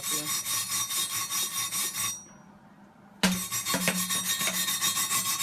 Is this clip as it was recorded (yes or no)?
yes